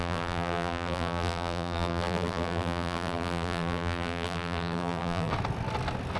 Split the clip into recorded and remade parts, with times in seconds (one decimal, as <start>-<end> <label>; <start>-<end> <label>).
0.0-5.3 remade; 5.3-6.2 recorded